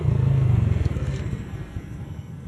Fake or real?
fake